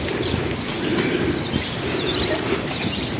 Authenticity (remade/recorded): remade